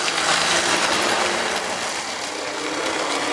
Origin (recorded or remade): recorded